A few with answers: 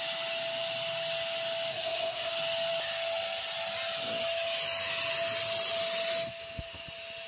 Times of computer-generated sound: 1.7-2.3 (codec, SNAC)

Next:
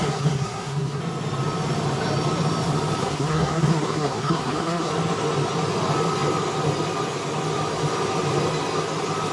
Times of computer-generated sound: 0.0-1.0 (codec, SNAC); 3.0-4.9

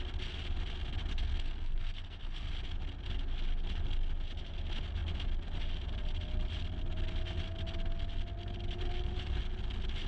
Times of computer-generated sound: 1.1-2.5 (codec, SNAC)

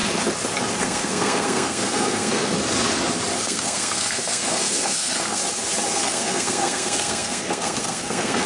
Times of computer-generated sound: 0.8-2.5 (codec, SNAC); 3.4-5.4; 5.9-8.5

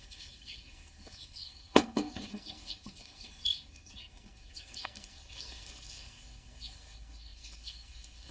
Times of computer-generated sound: 0.0-8.3 (codec, SNAC)

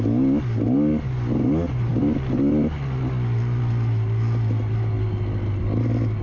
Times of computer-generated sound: none

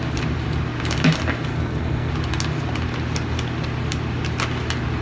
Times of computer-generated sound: 1.5-2.1 (codec, SNAC)